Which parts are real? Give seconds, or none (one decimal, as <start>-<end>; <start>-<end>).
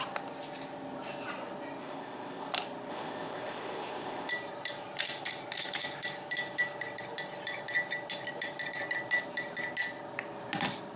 0.0-1.8; 2.5-2.9; 4.3-11.0